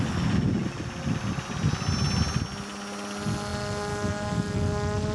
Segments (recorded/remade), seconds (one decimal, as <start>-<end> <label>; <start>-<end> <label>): 0.0-5.1 recorded

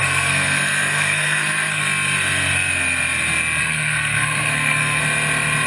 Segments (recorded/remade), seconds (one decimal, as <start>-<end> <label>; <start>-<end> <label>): 0.0-1.8 remade; 1.8-3.6 recorded; 3.6-5.0 remade; 5.0-5.7 recorded

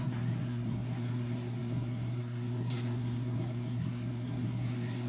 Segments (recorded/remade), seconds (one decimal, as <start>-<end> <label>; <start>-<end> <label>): 0.0-5.1 remade

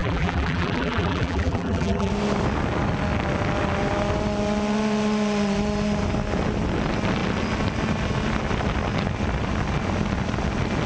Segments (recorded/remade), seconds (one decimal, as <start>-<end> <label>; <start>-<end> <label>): 0.0-2.1 remade; 2.1-10.9 recorded

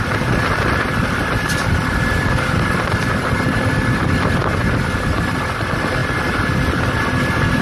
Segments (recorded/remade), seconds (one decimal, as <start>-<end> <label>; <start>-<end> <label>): 0.0-7.6 recorded